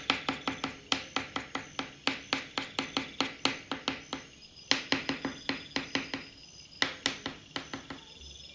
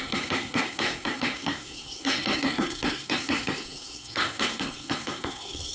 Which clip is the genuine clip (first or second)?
first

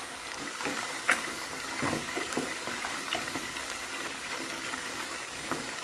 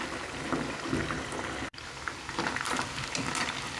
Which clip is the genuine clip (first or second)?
second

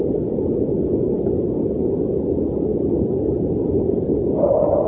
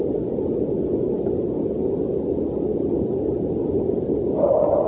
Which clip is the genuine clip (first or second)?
second